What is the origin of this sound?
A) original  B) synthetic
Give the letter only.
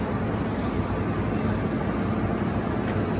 A